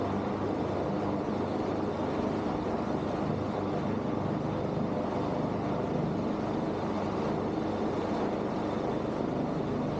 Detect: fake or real real